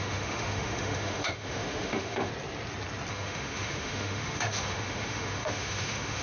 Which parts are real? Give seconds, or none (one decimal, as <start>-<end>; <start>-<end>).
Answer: 2.3-3.1